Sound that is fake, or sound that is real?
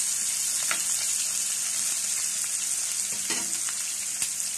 real